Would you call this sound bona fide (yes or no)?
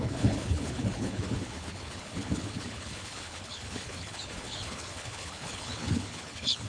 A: no